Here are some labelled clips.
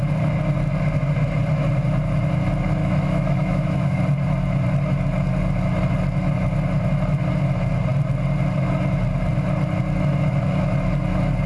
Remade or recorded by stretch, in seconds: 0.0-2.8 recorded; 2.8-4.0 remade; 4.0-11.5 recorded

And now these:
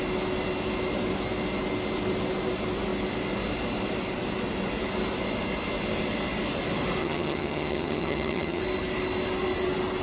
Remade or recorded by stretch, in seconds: 0.0-7.0 recorded; 7.0-8.6 remade; 8.6-10.0 recorded

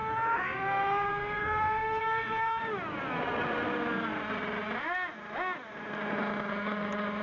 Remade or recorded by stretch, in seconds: 0.0-2.6 remade; 2.6-6.5 recorded; 6.5-7.2 remade

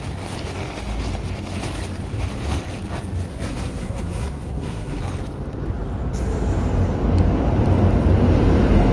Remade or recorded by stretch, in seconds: 0.0-3.3 recorded; 3.3-5.0 remade; 5.0-8.9 recorded

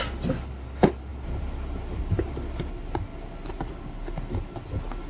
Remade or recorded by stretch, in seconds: 0.0-5.1 recorded

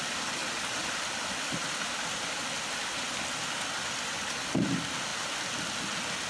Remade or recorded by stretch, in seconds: 0.0-6.3 recorded